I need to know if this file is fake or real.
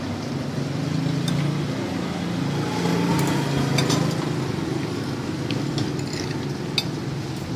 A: real